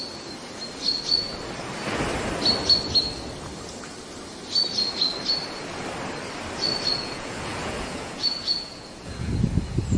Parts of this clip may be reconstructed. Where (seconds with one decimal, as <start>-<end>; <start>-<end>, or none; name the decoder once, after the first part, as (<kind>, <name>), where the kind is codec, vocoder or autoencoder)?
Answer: 6.9-9.3 (vocoder, Vocos)